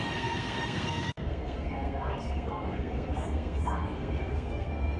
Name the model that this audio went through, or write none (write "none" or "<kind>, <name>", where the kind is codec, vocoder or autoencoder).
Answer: codec, SNAC